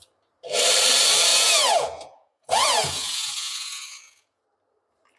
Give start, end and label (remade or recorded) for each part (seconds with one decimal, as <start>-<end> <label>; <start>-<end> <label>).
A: 0.0-1.3 recorded; 1.3-4.4 remade; 4.4-5.2 recorded